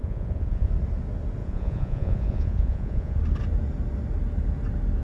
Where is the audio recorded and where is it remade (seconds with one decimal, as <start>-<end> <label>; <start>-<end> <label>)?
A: 0.0-0.7 remade; 0.7-1.4 recorded; 1.4-3.2 remade; 3.2-5.0 recorded